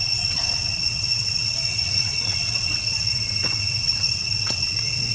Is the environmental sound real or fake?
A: fake